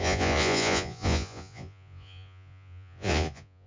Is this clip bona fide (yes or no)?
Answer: no